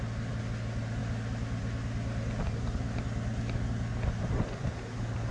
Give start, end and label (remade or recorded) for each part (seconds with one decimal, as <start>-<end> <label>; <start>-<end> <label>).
0.0-5.3 recorded

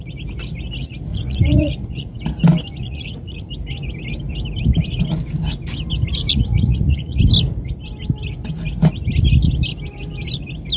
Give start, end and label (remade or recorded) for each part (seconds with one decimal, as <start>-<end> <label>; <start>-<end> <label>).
0.0-1.1 recorded; 1.1-2.2 remade; 2.2-2.8 recorded; 2.8-3.5 remade; 3.5-6.3 recorded; 6.3-7.2 remade; 7.2-10.8 recorded

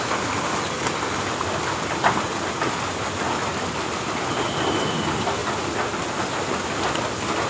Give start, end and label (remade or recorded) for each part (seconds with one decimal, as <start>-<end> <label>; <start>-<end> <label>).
0.0-7.5 recorded